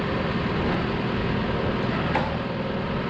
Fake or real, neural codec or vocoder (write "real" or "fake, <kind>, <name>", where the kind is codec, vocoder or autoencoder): real